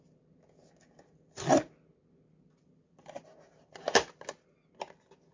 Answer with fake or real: real